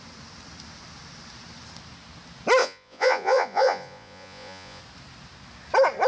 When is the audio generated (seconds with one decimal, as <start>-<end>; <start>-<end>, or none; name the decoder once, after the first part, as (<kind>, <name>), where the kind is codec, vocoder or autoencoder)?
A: 2.6-4.8 (vocoder, Vocos)